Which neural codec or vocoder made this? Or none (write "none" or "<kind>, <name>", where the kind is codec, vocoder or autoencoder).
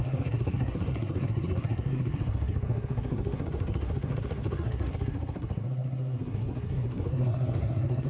codec, SNAC